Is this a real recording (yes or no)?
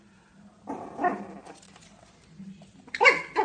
yes